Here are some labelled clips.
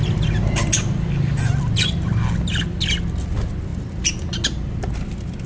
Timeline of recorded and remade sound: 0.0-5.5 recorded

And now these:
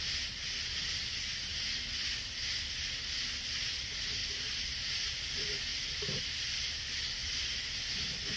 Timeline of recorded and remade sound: 0.0-4.2 recorded; 4.2-5.3 remade; 5.3-5.7 recorded; 5.7-6.8 remade; 6.8-8.4 recorded

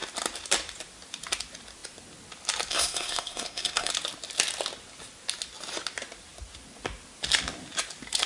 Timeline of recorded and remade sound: 0.0-2.7 recorded; 2.7-3.9 remade; 3.9-8.3 recorded

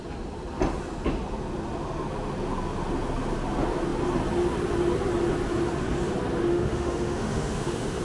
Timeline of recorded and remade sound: 0.0-6.5 recorded; 6.5-8.0 remade

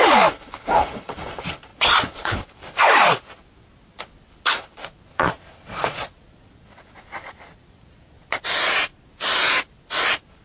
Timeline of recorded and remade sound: 0.0-1.7 recorded; 1.7-2.3 remade; 2.3-4.8 recorded; 4.8-8.3 remade; 8.3-10.4 recorded

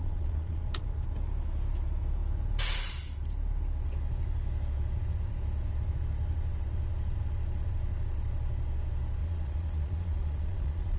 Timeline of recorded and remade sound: 0.0-0.6 remade; 0.6-9.2 recorded; 9.2-11.0 remade

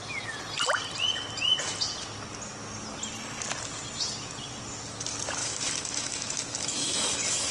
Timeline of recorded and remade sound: 0.0-5.4 recorded; 5.4-7.5 remade

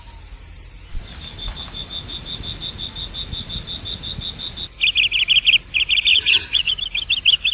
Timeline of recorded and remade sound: 0.0-6.1 recorded; 6.1-6.7 remade; 6.7-7.5 recorded